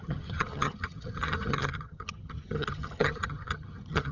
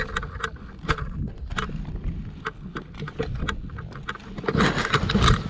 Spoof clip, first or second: first